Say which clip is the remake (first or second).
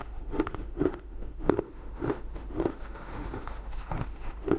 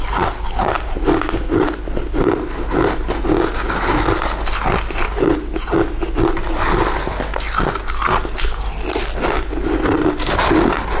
first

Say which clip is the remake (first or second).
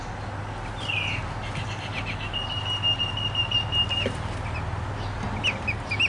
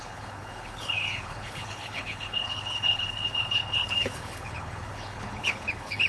second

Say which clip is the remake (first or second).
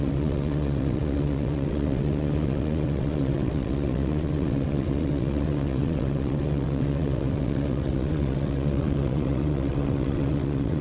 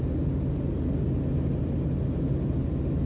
first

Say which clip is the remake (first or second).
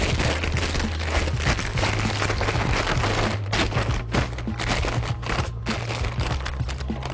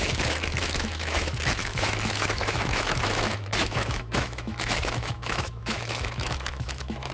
second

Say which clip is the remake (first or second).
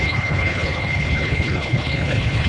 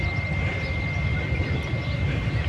first